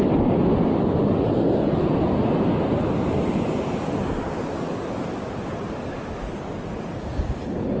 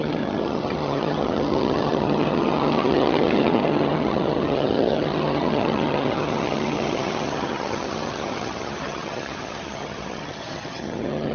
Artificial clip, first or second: second